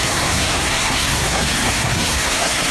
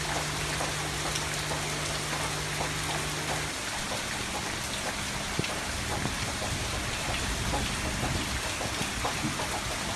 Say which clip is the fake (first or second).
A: first